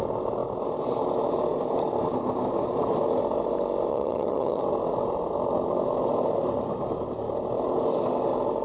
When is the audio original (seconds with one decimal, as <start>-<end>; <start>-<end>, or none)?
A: 0.0-3.9; 4.6-8.6